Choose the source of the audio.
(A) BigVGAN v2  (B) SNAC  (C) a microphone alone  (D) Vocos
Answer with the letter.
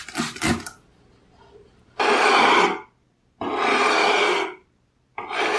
C